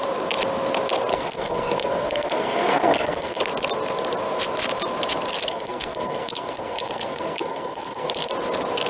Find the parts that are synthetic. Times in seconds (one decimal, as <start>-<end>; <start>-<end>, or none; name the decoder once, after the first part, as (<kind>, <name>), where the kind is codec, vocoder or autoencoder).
1.1-3.4 (codec, SNAC); 5.3-8.3